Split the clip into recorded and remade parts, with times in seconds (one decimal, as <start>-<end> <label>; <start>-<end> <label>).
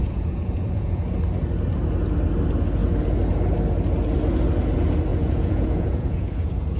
0.0-1.0 remade; 1.0-5.1 recorded; 5.1-6.8 remade